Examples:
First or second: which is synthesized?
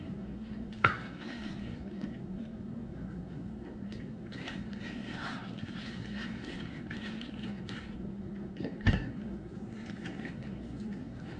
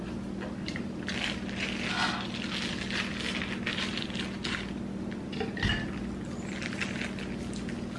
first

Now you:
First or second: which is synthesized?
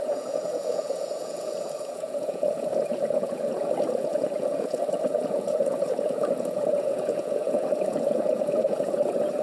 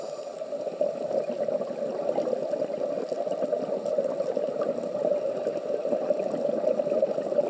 first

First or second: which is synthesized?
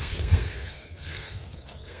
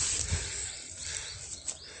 first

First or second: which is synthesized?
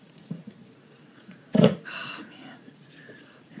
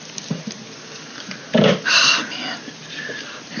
first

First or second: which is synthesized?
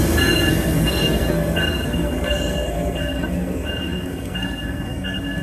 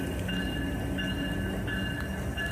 first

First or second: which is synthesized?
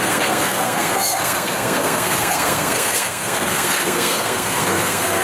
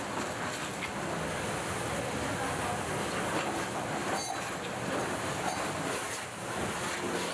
first